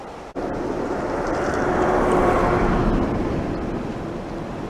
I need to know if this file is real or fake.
real